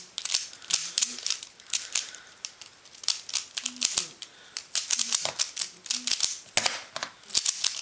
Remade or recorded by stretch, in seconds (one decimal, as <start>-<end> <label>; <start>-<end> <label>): 0.0-0.8 recorded; 0.8-2.8 remade; 2.8-4.3 recorded; 4.3-5.3 remade; 5.3-7.8 recorded